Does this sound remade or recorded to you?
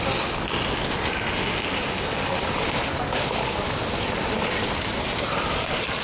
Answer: recorded